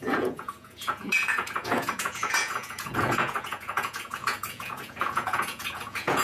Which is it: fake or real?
fake